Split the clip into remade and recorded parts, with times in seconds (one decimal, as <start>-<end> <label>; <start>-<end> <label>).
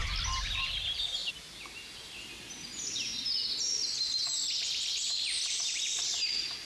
0.0-6.7 recorded